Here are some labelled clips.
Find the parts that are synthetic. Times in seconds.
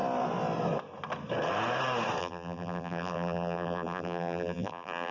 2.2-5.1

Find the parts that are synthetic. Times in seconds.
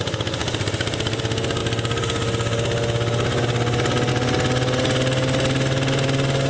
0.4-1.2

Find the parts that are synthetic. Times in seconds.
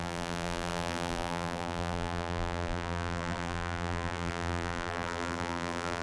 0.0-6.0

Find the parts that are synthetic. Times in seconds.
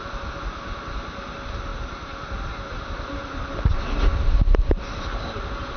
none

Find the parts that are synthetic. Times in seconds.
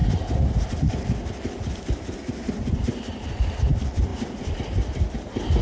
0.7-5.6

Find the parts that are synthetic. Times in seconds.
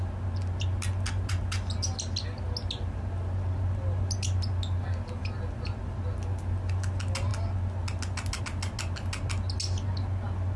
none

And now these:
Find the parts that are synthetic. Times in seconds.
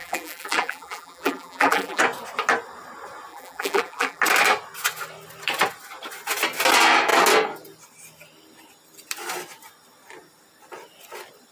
0.0-2.0; 3.3-4.2